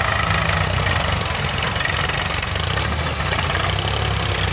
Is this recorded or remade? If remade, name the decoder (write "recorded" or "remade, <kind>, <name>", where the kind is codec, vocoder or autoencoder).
recorded